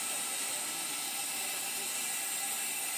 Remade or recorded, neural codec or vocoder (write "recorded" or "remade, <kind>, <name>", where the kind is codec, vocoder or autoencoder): recorded